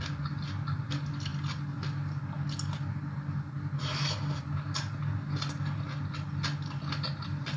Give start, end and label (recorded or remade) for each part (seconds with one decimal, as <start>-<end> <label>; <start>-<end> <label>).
0.0-7.6 recorded